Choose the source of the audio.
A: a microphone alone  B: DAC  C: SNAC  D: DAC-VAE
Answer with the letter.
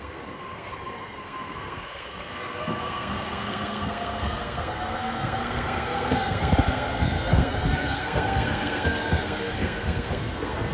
C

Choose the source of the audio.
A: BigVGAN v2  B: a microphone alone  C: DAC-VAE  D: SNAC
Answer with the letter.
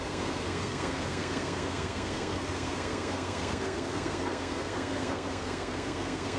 D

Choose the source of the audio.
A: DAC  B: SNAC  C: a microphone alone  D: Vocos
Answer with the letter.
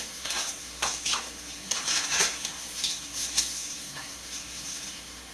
B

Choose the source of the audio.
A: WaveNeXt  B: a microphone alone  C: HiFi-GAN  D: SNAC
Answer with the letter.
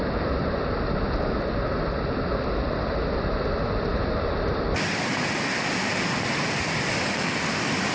B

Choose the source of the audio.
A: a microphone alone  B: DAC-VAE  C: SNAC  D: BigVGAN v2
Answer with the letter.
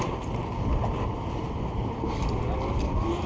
A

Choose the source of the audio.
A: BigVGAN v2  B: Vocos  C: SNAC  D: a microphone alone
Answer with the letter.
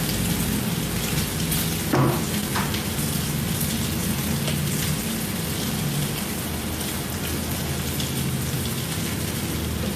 D